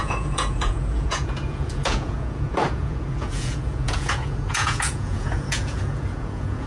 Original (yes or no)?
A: no